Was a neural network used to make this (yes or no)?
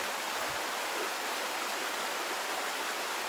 no